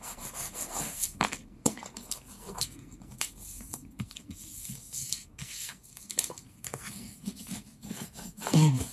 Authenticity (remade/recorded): remade